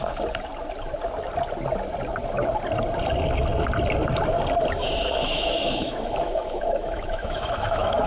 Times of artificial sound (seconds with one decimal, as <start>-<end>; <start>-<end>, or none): 4.8-8.1